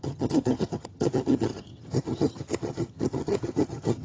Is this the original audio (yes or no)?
no